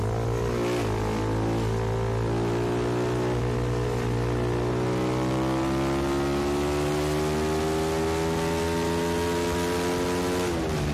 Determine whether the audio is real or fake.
real